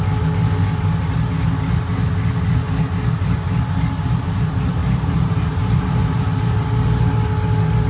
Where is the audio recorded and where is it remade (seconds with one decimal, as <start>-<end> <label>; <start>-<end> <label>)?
0.0-4.8 recorded; 4.8-6.2 remade; 6.2-7.9 recorded

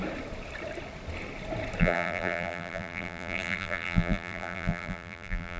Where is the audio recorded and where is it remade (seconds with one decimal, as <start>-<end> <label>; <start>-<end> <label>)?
0.0-1.8 recorded; 1.8-5.6 remade

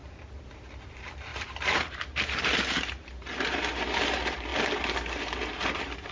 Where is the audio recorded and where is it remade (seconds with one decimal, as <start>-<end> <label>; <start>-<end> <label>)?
0.0-0.9 recorded; 0.9-4.5 remade; 4.5-5.2 recorded; 5.2-6.1 remade

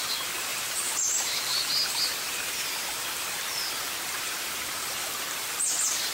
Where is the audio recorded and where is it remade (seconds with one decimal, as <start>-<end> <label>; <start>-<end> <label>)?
0.0-0.5 recorded; 0.5-2.5 remade; 2.5-6.1 recorded

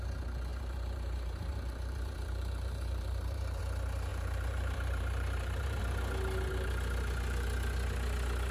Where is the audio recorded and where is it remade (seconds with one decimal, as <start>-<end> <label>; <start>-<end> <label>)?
0.0-0.5 recorded; 0.5-3.6 remade; 3.6-4.1 recorded; 4.1-5.8 remade; 5.8-8.5 recorded